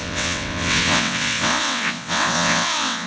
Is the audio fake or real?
fake